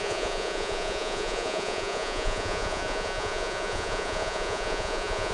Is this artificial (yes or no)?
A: yes